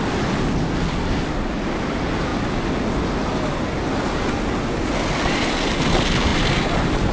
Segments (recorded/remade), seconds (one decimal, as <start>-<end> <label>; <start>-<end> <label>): 0.0-7.1 recorded